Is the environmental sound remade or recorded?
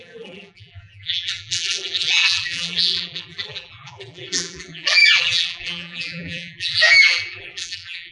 remade